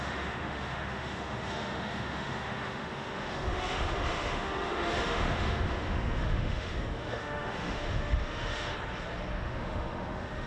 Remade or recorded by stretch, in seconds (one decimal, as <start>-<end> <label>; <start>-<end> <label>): 0.0-8.7 remade; 8.7-9.3 recorded; 9.3-10.5 remade